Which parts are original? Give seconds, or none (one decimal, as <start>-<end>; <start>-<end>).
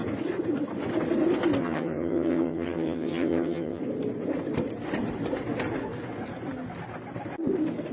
0.0-1.6; 3.8-7.9